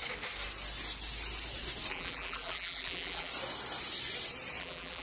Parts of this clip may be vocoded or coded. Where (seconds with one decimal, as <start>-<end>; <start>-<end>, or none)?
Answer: 1.9-3.3; 4.6-5.0